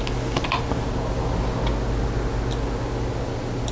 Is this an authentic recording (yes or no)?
yes